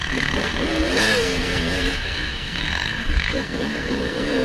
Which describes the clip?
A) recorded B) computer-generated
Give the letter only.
B